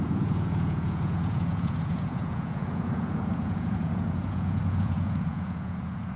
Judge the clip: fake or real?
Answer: fake